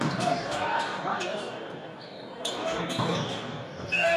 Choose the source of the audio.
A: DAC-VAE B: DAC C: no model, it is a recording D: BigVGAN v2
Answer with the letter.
B